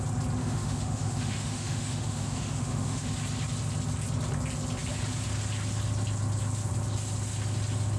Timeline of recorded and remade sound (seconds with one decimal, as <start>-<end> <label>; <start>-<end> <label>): 0.0-0.4 recorded; 0.4-3.1 remade; 3.1-8.0 recorded